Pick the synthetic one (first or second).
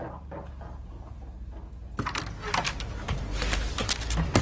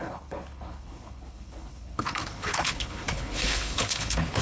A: second